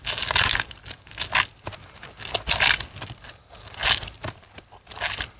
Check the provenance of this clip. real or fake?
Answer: real